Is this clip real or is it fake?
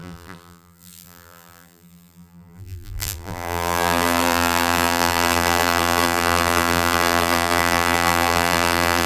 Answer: fake